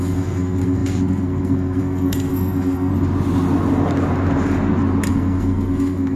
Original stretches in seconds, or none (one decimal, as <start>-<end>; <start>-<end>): 2.9-5.1